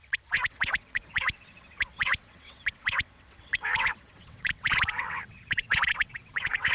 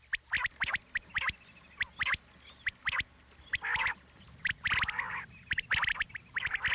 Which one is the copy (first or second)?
first